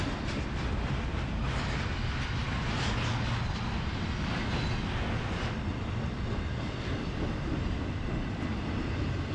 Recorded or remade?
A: recorded